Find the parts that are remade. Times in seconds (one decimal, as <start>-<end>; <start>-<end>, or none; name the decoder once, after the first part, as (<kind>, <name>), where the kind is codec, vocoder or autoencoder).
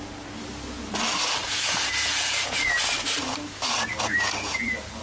1.4-2.7 (vocoder, Vocos); 3.9-5.0